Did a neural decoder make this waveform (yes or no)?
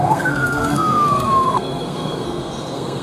yes